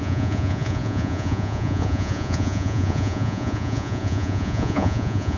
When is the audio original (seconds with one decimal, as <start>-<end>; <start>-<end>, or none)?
none

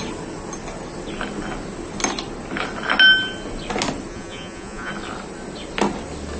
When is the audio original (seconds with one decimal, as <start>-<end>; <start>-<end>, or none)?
0.0-4.1; 4.9-6.4

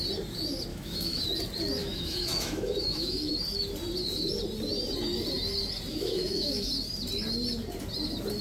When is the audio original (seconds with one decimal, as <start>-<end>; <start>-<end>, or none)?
0.0-0.7; 1.2-1.8; 3.3-5.9; 6.7-8.4

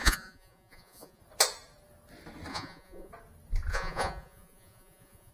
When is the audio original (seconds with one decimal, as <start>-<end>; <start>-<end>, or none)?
1.2-2.5; 3.1-3.7